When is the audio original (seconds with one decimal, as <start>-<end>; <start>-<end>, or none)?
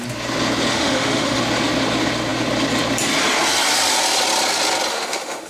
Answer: 0.0-0.7; 1.4-4.9